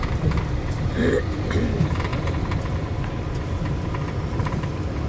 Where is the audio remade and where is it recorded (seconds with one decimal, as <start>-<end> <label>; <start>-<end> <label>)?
0.0-2.1 remade; 2.1-5.1 recorded